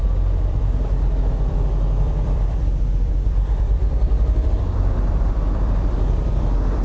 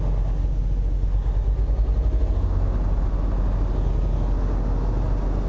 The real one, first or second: second